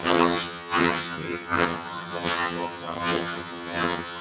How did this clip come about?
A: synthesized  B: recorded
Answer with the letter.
A